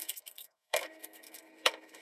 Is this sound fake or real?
fake